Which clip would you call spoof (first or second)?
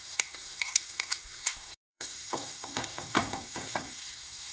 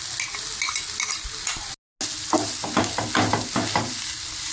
first